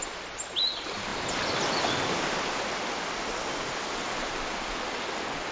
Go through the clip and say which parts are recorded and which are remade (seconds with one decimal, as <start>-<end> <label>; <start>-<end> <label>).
0.0-5.5 recorded